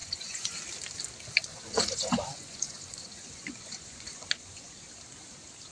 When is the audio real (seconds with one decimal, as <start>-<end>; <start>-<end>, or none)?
0.6-1.5; 4.9-5.7